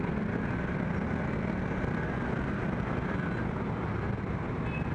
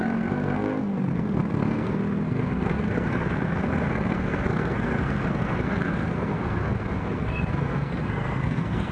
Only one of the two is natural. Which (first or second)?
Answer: first